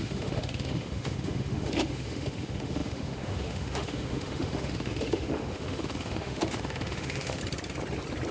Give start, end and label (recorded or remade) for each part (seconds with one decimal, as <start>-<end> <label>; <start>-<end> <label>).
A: 0.0-7.4 remade; 7.4-8.3 recorded